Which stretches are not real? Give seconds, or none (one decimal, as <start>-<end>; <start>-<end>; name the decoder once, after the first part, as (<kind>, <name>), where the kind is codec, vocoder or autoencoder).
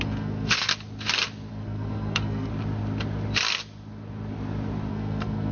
0.0-0.7 (codec, SNAC); 1.5-2.5; 4.9-5.5